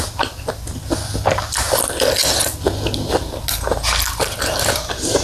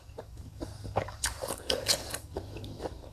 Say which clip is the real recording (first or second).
first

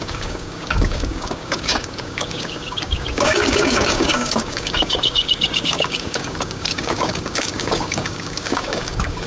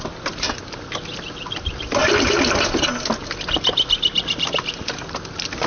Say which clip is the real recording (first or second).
second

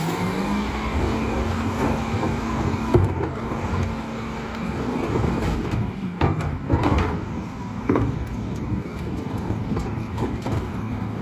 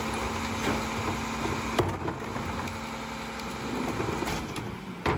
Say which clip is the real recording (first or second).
second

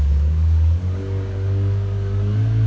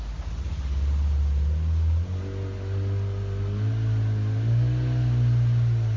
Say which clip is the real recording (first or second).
second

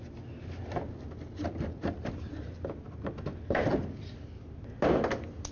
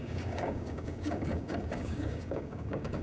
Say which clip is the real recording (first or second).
first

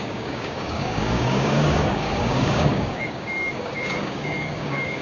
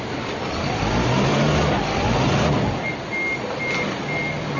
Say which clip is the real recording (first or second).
second